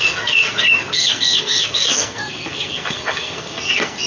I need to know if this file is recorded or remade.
remade